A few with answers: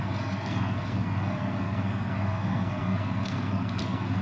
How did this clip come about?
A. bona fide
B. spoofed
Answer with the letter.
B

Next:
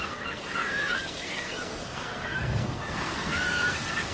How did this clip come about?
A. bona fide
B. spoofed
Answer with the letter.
B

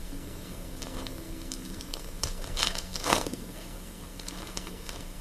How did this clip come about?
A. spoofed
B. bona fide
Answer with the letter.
A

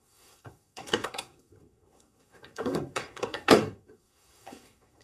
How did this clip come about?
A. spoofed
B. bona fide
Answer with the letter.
A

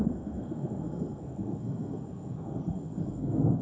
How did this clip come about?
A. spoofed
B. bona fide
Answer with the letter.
A